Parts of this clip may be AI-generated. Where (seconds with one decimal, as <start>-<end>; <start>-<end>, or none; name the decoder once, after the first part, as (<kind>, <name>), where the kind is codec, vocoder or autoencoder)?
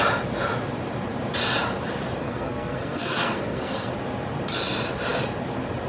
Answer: 2.2-3.9 (codec, SNAC)